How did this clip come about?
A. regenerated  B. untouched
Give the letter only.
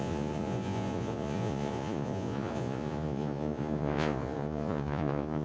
A